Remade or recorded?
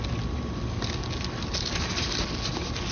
recorded